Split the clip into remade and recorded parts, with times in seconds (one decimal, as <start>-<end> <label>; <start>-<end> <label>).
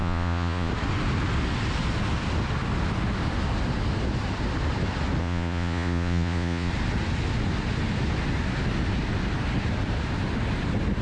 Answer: 0.0-0.7 remade; 0.7-5.2 recorded; 5.2-6.7 remade; 6.7-11.0 recorded